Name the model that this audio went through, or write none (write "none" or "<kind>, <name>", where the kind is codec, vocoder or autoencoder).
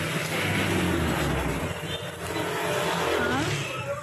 none